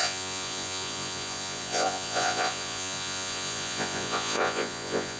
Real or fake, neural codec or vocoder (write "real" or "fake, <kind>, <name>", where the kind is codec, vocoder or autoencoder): fake, vocoder, Vocos